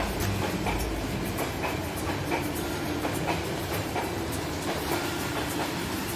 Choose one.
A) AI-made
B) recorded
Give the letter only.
A